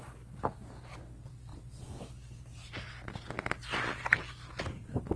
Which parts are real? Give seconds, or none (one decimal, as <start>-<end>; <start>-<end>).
0.0-5.2